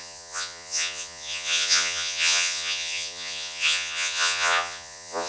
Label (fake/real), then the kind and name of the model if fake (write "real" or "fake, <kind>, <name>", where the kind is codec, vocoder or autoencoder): fake, vocoder, Vocos